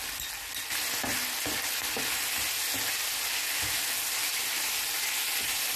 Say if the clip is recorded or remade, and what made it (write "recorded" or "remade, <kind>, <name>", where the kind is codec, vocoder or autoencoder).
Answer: recorded